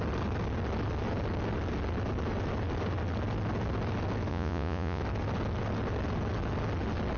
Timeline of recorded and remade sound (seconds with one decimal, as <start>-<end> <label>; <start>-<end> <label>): 0.0-4.3 recorded; 4.3-5.0 remade; 5.0-7.2 recorded